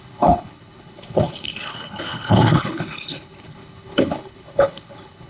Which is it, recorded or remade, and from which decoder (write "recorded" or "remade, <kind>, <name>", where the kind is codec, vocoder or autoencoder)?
remade, codec, HILCodec